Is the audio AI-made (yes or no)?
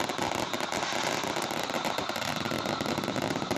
no